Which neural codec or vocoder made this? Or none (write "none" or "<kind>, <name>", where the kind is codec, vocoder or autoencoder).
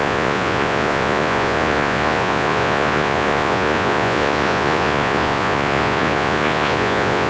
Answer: vocoder, Vocos